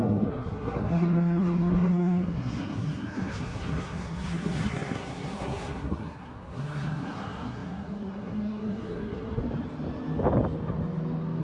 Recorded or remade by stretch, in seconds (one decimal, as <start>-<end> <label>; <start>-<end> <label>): 0.0-9.4 remade; 9.4-11.4 recorded